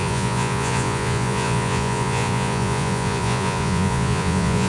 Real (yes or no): no